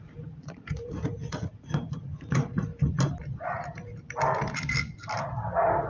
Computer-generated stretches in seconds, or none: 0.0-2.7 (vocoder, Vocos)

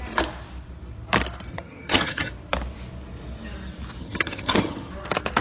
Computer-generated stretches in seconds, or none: 1.5-2.3 (vocoder, HiFi-GAN); 4.0-4.9